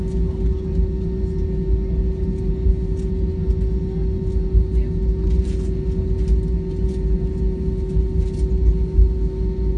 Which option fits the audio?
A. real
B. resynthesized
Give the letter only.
A